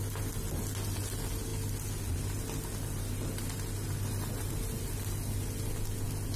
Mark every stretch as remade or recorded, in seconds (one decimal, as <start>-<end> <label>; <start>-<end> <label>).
0.0-6.4 recorded